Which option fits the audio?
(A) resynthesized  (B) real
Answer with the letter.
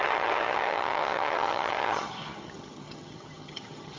A